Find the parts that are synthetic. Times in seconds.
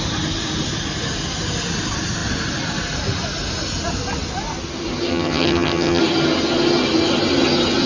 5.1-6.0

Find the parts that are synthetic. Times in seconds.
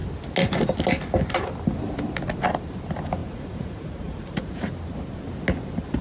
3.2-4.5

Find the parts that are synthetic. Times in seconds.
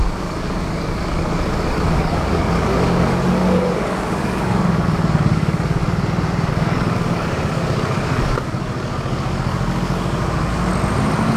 0.0-5.8; 6.5-10.7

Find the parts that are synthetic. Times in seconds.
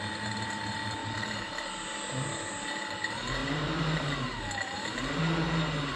1.0-1.7; 3.4-5.2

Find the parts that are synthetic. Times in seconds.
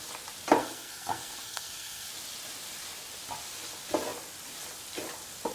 0.6-2.1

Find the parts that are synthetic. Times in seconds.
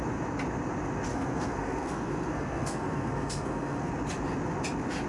1.1-3.9